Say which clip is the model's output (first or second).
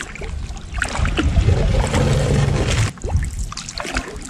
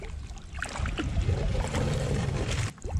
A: second